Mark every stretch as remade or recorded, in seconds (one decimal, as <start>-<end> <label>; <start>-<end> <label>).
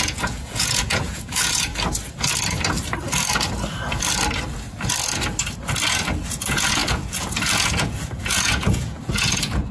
0.0-1.7 remade; 1.7-6.3 recorded; 6.3-9.7 remade